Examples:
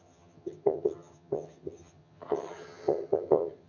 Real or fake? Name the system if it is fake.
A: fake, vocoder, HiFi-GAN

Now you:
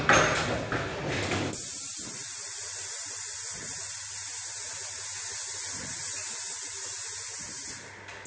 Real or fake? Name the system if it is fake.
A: real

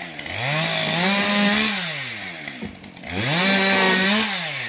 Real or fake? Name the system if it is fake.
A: real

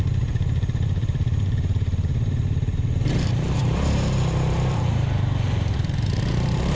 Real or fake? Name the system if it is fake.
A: fake, vocoder, BigVGAN v2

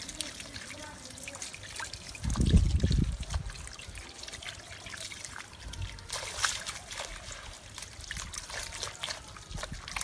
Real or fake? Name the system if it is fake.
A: real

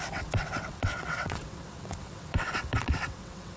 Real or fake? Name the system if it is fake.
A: fake, vocoder, WaveNeXt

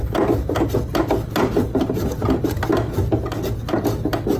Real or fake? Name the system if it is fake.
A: real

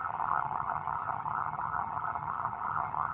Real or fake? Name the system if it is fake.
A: fake, vocoder, HiFi-GAN